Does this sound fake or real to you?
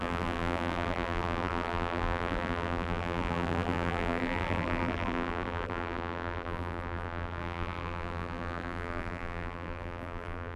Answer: fake